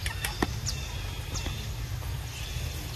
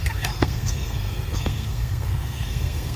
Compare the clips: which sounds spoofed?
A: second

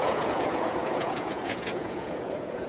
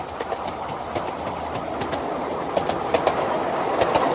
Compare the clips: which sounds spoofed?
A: first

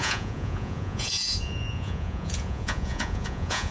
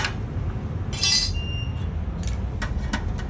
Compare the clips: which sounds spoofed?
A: first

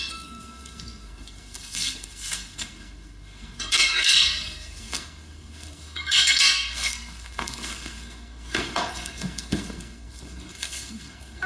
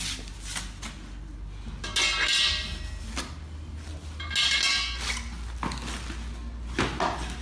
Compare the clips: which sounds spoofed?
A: first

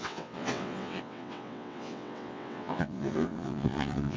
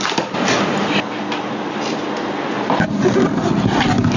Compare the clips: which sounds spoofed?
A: first